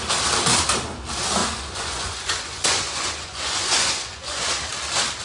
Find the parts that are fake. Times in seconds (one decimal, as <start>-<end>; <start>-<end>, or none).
1.4-4.5